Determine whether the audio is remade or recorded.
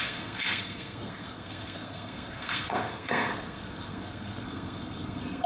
remade